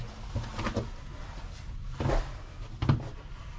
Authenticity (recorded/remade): recorded